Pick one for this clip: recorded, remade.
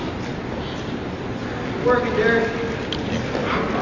recorded